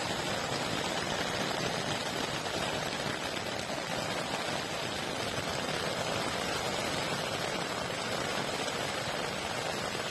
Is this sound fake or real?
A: real